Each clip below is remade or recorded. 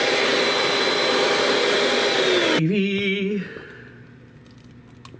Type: recorded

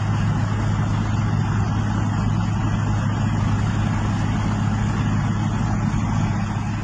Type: recorded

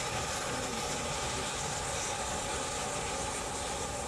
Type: recorded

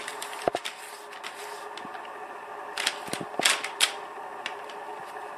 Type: recorded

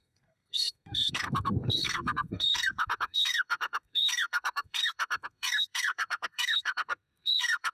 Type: remade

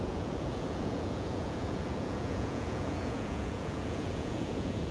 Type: remade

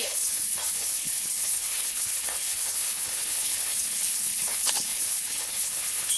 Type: remade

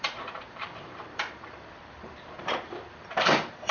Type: remade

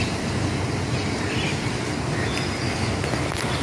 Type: remade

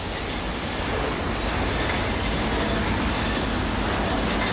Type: recorded